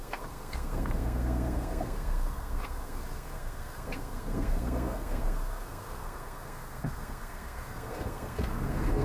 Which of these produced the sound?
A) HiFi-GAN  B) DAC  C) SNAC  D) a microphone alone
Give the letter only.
C